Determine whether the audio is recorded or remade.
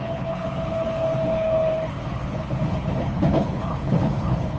remade